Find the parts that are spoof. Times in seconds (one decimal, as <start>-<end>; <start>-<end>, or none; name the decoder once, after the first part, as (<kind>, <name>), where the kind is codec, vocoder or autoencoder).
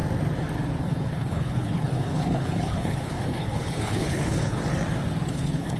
0.8-4.6 (codec, HILCodec); 5.3-5.8